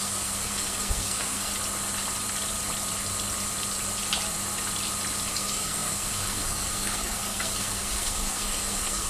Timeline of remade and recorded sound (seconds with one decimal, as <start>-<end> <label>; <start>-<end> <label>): 0.0-1.5 remade; 1.5-5.3 recorded; 5.3-9.1 remade